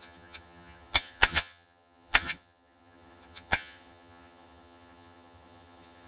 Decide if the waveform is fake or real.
fake